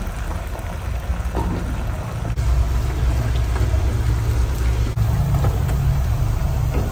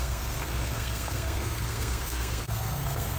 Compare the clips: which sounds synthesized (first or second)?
second